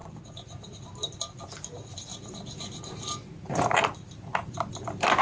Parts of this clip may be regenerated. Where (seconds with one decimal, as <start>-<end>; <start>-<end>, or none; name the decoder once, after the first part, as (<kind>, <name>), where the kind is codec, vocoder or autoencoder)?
none